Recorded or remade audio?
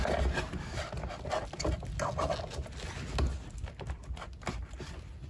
recorded